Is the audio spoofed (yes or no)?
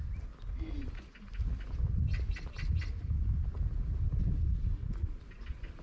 no